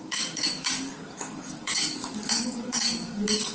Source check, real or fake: fake